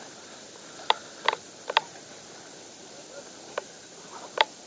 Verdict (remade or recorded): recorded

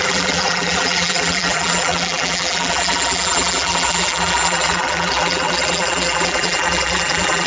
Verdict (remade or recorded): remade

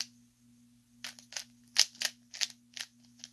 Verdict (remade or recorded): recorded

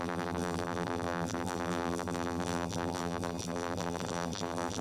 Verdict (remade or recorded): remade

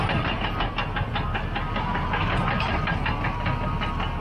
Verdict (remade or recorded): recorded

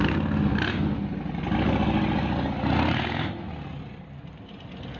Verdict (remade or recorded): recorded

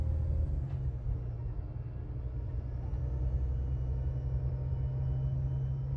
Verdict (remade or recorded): recorded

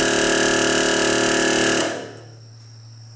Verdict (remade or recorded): recorded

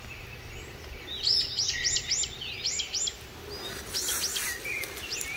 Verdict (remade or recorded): recorded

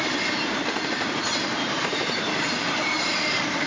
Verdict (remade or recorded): remade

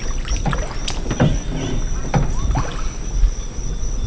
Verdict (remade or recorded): recorded